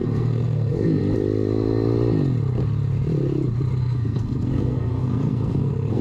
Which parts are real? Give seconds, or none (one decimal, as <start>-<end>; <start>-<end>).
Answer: 1.0-3.8